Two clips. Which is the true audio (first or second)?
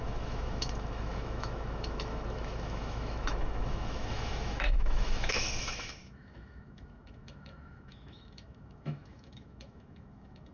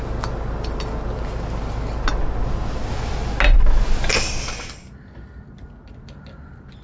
second